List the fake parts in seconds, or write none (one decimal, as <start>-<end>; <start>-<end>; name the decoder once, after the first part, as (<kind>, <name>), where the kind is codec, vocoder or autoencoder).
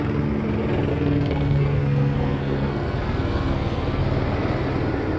0.9-4.0 (codec, SNAC)